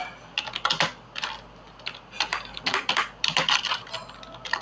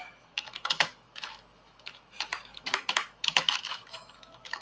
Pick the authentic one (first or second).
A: first